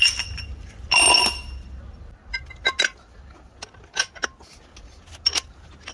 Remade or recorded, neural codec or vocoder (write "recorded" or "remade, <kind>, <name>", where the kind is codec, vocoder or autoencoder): recorded